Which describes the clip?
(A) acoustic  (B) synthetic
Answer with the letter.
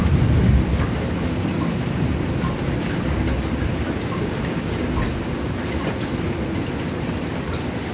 A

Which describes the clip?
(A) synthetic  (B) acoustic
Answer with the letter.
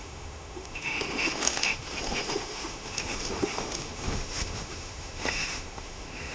A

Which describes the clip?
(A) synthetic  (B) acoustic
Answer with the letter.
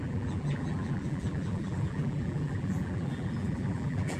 A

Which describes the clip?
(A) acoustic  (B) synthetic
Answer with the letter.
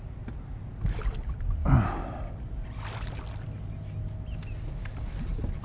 A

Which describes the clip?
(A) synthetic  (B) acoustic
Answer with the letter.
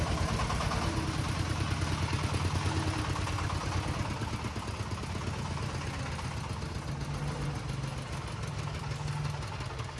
B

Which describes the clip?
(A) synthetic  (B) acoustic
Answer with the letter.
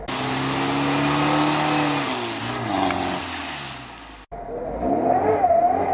B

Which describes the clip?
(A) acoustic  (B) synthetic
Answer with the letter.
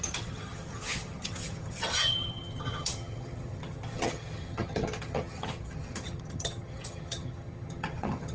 B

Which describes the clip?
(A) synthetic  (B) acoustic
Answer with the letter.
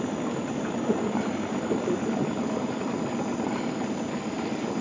B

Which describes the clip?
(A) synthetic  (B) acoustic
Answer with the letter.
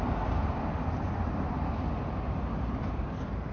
A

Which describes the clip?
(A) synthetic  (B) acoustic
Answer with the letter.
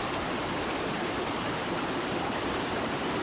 B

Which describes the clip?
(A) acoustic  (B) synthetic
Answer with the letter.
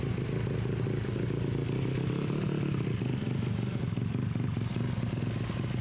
A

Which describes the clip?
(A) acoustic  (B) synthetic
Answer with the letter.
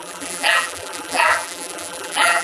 B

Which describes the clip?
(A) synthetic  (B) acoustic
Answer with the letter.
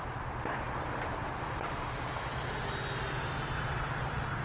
B